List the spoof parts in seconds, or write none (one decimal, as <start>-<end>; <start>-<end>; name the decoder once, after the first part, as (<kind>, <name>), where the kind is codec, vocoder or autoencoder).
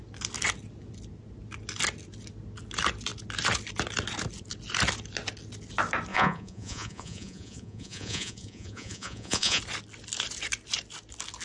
6.1-9.6 (vocoder, Vocos)